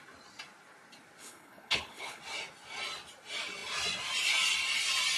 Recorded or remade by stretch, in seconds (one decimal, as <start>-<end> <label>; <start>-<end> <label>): 0.0-1.2 recorded; 1.2-2.2 remade; 2.2-5.2 recorded